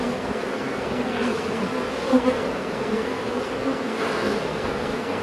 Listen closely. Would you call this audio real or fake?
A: fake